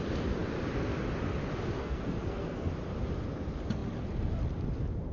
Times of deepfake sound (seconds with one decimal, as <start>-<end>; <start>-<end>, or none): 1.8-2.7